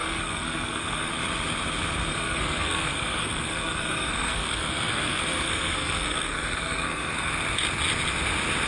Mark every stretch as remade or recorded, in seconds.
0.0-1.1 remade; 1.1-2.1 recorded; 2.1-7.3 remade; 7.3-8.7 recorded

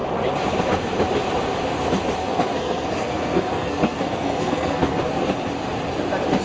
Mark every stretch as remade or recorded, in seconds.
0.0-2.2 recorded; 2.2-5.0 remade; 5.0-6.4 recorded

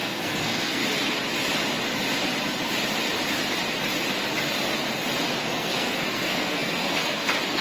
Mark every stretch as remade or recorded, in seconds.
0.0-0.8 remade; 0.8-5.4 recorded; 5.4-7.6 remade